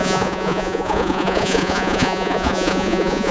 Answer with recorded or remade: remade